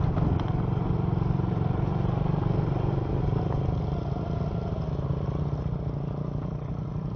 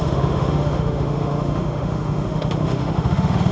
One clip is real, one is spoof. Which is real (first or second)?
first